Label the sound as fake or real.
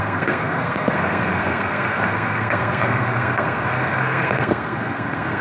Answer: fake